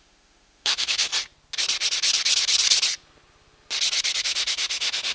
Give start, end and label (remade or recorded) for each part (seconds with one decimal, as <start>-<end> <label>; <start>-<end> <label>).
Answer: 0.0-1.1 remade; 1.1-4.2 recorded; 4.2-5.1 remade